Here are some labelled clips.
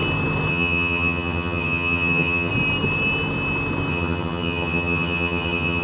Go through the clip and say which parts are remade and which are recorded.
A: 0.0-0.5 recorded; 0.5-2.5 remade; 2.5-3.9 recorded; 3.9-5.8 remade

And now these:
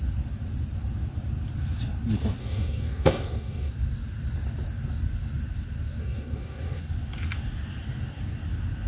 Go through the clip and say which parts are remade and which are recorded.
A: 0.0-2.4 recorded; 2.4-3.7 remade; 3.7-6.0 recorded; 6.0-6.8 remade; 6.8-8.9 recorded

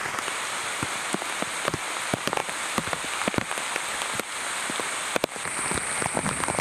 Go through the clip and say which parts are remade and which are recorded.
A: 0.0-6.6 recorded